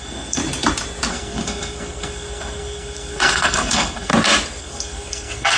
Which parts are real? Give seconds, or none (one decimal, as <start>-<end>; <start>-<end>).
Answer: 0.4-1.1; 4.1-4.6